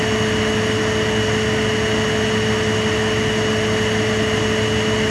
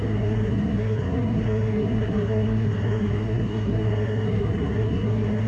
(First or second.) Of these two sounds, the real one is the first